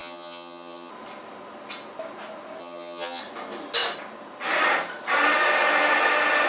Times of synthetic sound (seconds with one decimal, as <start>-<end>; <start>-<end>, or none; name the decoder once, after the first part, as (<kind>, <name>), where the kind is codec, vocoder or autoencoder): 0.0-0.9 (vocoder, HiFi-GAN); 2.6-3.2